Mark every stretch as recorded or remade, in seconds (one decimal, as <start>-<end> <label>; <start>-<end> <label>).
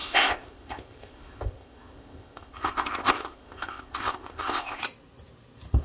0.0-4.8 remade; 4.8-5.8 recorded